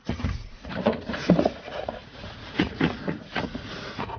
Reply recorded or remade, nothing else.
remade